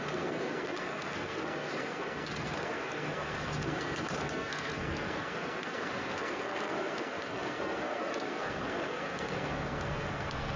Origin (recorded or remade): remade